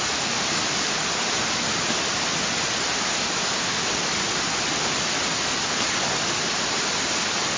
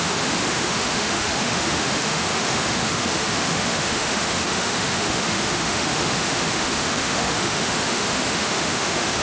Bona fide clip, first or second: first